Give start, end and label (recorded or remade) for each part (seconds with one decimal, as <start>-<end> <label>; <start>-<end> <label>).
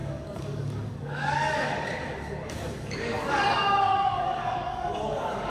0.0-5.5 remade